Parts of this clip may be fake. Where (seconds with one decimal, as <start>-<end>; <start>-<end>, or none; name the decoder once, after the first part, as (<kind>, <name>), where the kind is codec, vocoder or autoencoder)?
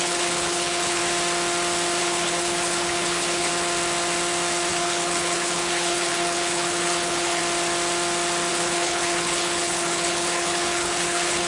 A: 0.0-1.0 (codec, HILCodec); 2.0-3.5; 4.7-7.4; 8.5-11.5